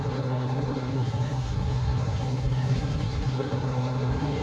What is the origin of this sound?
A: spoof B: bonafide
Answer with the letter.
A